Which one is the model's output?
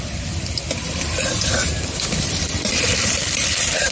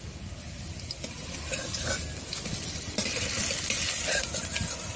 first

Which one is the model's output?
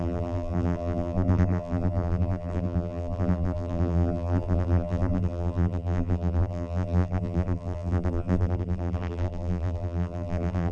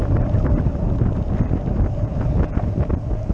first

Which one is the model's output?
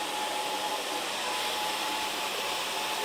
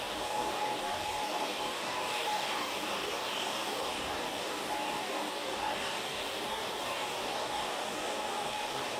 second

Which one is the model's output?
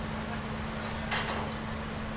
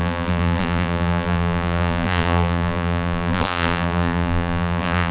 second